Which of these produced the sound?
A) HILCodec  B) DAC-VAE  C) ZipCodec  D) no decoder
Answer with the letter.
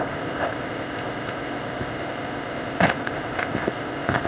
C